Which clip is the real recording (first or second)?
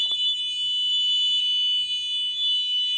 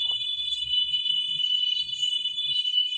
first